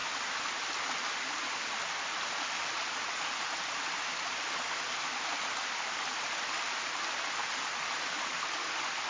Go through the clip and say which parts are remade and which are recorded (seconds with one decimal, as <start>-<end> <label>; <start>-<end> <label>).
0.0-9.1 recorded